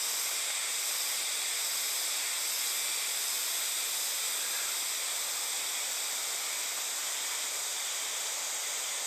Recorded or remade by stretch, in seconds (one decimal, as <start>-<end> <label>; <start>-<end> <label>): 0.0-9.1 recorded